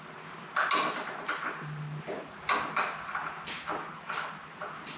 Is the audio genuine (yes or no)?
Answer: yes